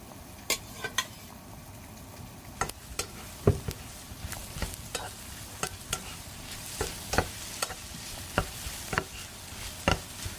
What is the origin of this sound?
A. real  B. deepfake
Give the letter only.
A